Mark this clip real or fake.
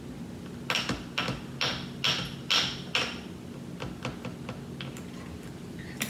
real